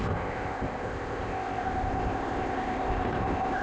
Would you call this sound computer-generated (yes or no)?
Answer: yes